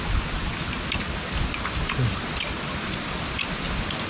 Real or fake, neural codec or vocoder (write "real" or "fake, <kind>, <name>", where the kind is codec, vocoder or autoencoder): real